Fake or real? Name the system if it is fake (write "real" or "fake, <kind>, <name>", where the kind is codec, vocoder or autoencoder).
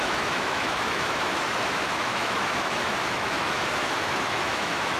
fake, autoencoder, DAC-VAE